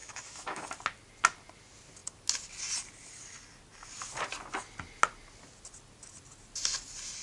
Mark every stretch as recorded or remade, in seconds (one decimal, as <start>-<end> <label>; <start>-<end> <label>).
0.0-0.6 remade; 0.6-7.2 recorded